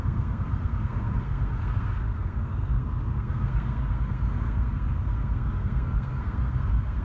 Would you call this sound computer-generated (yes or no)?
yes